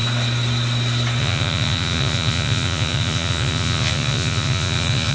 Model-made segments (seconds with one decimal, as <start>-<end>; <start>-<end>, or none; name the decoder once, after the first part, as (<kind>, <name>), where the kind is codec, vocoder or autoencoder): 1.2-5.1 (vocoder, Vocos)